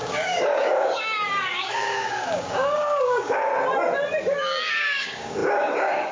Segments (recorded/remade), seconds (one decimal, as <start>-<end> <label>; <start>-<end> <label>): 0.0-3.5 remade; 3.5-4.2 recorded; 4.2-6.1 remade